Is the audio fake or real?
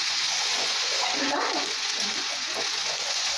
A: fake